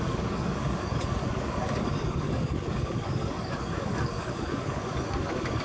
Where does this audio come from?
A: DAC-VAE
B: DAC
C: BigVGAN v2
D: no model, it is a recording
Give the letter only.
B